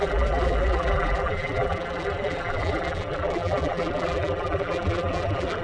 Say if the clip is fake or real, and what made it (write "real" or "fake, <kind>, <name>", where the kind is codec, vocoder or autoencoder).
fake, vocoder, BigVGAN v2